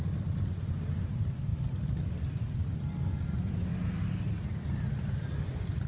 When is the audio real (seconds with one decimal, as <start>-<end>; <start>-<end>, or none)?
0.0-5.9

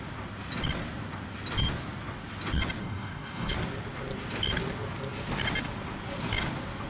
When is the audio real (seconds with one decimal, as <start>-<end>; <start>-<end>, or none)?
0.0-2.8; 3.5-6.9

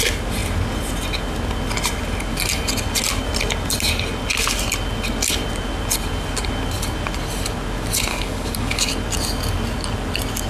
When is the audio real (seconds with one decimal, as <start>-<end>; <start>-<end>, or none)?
0.0-8.1; 8.9-10.5

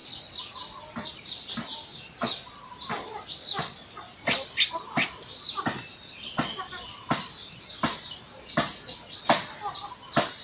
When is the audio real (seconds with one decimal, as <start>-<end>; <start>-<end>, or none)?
0.0-10.4

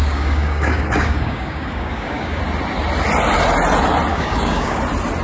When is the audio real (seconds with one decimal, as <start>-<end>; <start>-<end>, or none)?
2.4-4.1; 4.8-5.2

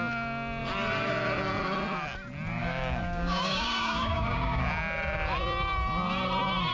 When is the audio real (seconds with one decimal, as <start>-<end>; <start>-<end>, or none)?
0.0-2.6; 4.6-6.7